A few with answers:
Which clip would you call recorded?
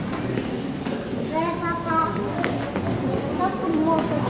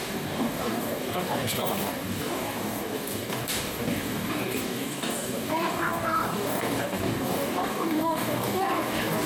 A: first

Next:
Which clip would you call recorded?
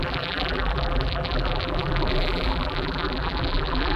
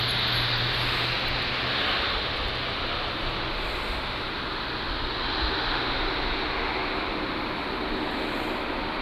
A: second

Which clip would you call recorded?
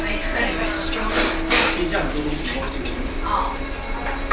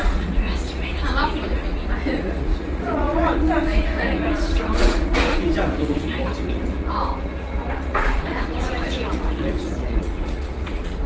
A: first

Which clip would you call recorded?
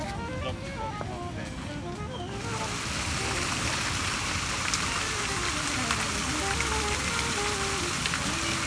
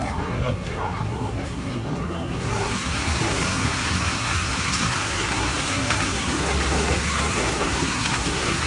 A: first